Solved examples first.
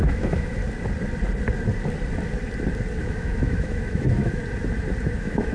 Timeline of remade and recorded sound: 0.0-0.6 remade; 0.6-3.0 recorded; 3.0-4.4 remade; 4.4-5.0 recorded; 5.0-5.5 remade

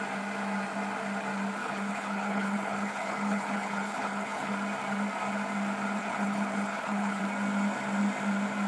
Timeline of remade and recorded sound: 0.0-1.6 recorded; 1.6-4.5 remade; 4.5-6.0 recorded; 6.0-7.2 remade; 7.2-8.7 recorded

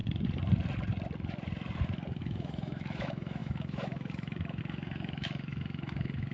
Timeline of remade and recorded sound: 0.0-2.2 recorded; 2.2-6.3 remade

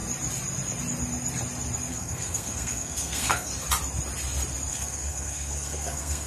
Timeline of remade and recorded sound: 0.0-1.9 recorded; 1.9-3.5 remade; 3.5-4.7 recorded; 4.7-6.3 remade